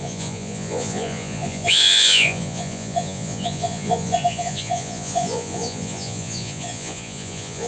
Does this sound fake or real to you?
fake